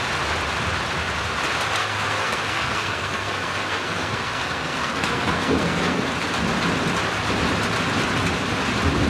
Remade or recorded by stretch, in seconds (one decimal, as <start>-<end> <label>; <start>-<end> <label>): 0.0-1.8 recorded; 1.8-6.0 remade; 6.0-9.1 recorded